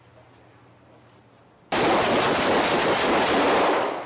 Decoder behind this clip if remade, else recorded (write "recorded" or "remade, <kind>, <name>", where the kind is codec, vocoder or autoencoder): recorded